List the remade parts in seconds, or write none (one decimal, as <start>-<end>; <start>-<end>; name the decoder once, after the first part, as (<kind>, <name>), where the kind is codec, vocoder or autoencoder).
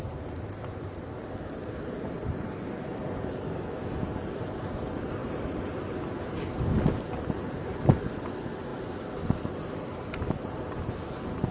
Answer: none